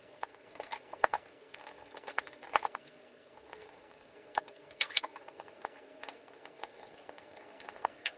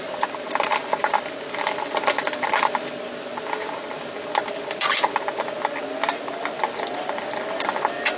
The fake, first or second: first